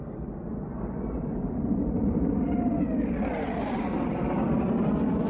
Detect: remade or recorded recorded